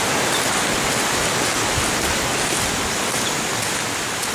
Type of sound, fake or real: real